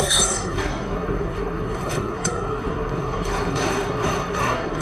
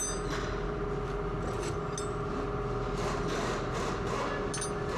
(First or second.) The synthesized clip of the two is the first